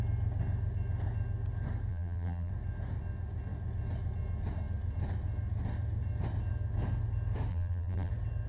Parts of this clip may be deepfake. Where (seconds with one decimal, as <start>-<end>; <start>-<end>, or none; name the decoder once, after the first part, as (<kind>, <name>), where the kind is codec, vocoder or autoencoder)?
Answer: 1.9-2.5 (vocoder, BigVGAN v2); 7.5-8.1